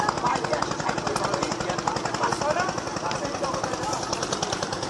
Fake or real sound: real